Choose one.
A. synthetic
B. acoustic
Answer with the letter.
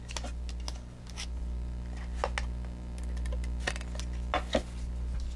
B